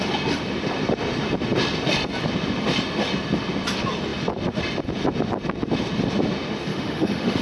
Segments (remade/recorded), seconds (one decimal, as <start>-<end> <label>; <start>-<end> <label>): 0.0-6.7 recorded; 6.7-7.4 remade

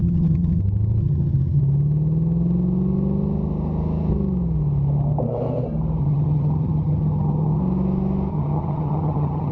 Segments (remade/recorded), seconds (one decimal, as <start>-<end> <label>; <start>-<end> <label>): 0.0-0.6 remade; 0.6-1.0 recorded; 1.0-1.6 remade; 1.6-6.0 recorded; 6.0-7.6 remade; 7.6-8.3 recorded; 8.3-9.5 remade